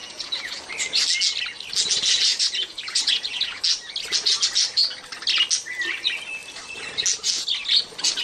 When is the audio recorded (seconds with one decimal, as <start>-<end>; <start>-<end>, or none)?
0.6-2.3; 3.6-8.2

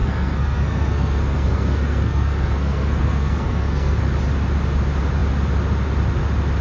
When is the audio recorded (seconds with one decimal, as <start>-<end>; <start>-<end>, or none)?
4.0-6.6

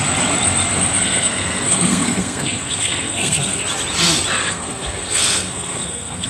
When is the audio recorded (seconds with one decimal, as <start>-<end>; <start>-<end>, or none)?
0.0-1.0; 3.6-4.4